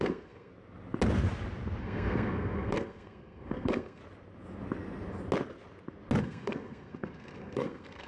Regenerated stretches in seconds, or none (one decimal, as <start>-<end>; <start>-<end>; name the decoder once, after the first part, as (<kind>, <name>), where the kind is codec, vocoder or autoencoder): 0.0-0.5 (codec, SNAC); 1.8-4.0; 6.2-8.1